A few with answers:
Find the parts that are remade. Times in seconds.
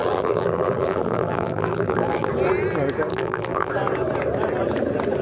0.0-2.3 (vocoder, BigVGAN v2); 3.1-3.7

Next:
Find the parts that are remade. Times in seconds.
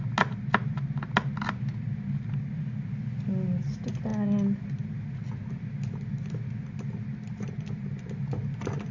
none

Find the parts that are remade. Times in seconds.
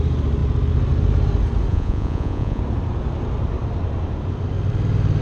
1.7-2.6 (vocoder, Vocos)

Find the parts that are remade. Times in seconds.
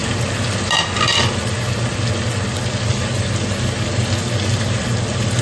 none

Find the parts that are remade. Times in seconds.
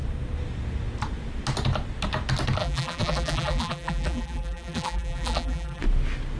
2.6-5.8 (vocoder, BigVGAN v2)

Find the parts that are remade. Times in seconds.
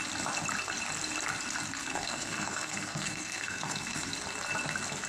1.9-4.1 (codec, SNAC)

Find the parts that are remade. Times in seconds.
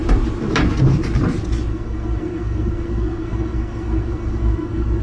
1.7-5.0 (codec, SNAC)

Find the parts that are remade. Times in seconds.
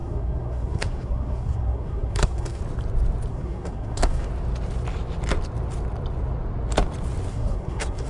0.0-2.6 (codec, SNAC); 3.3-4.3; 7.3-8.1